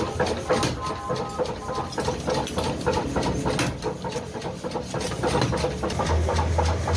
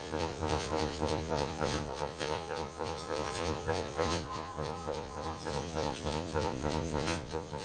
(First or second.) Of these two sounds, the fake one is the second